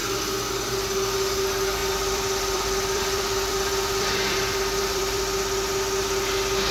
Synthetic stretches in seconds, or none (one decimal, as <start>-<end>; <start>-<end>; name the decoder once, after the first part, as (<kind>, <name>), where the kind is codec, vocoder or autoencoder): 1.8-5.2 (vocoder, BigVGAN v2)